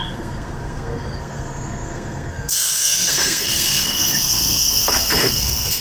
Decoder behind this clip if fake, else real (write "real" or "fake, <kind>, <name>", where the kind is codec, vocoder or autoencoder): fake, codec, SNAC